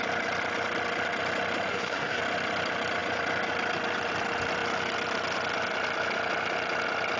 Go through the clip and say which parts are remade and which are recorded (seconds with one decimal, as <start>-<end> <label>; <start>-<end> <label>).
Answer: 0.0-1.7 recorded; 1.7-2.2 remade; 2.2-7.2 recorded